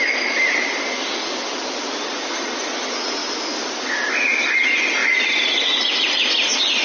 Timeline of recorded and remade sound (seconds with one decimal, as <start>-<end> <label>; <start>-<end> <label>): 0.0-6.8 recorded